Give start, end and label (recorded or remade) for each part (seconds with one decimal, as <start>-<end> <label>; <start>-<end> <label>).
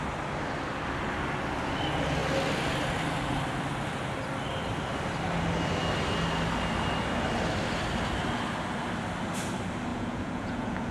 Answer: 0.0-9.9 recorded; 9.9-10.9 remade